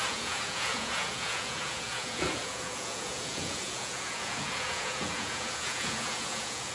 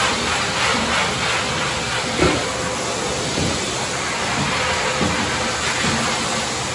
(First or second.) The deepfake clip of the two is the first